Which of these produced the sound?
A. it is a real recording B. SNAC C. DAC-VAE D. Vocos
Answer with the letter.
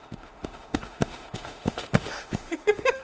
C